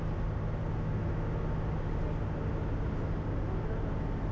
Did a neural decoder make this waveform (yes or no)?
no